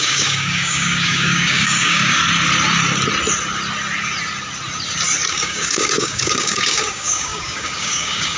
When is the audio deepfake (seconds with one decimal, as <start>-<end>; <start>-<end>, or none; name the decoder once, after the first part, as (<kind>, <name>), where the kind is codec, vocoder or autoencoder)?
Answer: 0.0-2.2 (codec, DAC); 5.3-8.4